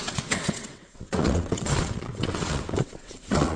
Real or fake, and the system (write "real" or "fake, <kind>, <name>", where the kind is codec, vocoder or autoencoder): fake, vocoder, WaveNeXt